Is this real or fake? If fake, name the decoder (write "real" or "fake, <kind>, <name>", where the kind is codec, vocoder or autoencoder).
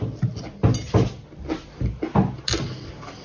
real